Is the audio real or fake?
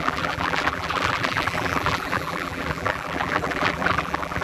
fake